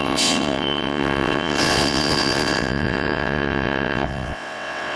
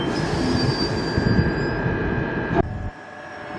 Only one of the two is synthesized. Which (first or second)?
first